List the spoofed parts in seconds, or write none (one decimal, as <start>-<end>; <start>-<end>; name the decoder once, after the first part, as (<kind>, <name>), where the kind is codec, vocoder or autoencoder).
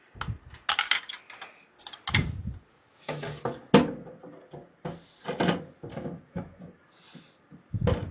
2.9-3.6 (autoencoder, DAC-VAE); 5.9-6.6